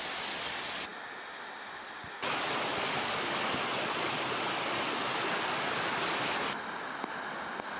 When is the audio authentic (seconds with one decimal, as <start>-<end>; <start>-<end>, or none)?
0.0-7.8